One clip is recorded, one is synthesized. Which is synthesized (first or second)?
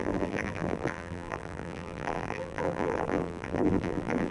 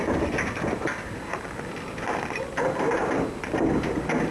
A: first